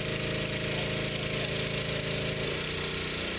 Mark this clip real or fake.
real